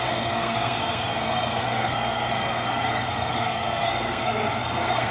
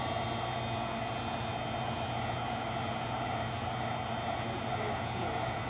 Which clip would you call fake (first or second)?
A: first